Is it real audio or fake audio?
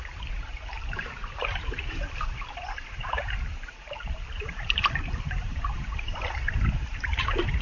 fake